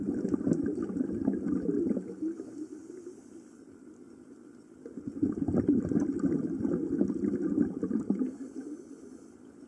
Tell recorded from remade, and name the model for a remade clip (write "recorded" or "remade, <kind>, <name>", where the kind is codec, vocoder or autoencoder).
recorded